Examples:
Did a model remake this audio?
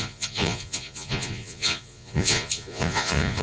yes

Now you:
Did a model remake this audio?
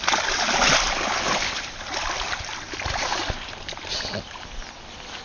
no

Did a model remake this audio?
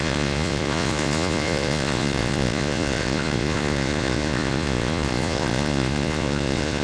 yes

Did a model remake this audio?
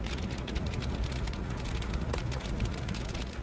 yes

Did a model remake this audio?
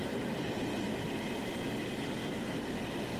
no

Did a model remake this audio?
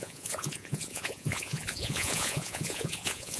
yes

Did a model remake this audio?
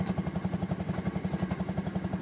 no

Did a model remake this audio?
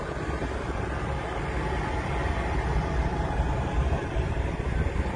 no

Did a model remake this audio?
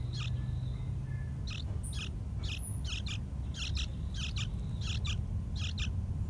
no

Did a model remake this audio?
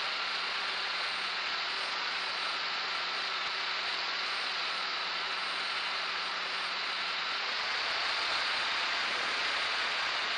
yes